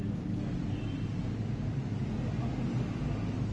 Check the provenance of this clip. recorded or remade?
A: recorded